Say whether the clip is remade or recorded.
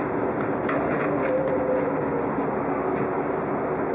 recorded